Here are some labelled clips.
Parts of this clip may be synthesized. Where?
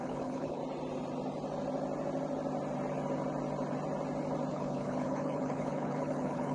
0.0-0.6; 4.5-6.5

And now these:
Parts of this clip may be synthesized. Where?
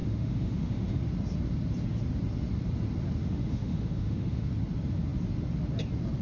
0.0-1.0; 3.2-4.5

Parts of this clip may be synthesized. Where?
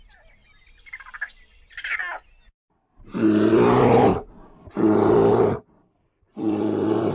0.0-0.4; 1.5-2.0; 3.5-4.1; 4.7-7.1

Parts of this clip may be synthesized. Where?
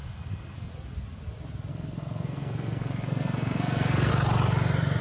0.0-0.7; 1.7-4.1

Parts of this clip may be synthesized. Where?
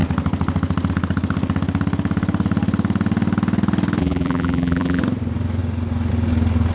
4.0-5.0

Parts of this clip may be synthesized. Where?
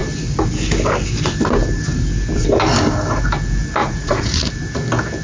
3.8-4.5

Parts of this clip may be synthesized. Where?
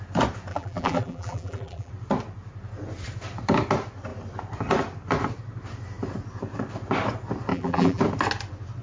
0.5-1.9; 7.5-8.0